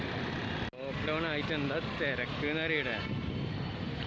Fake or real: real